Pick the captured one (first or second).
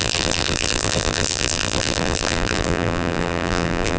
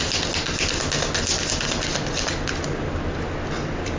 second